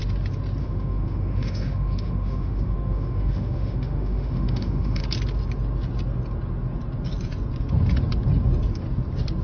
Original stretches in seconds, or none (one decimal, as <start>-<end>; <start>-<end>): 0.0-0.6; 5.0-9.4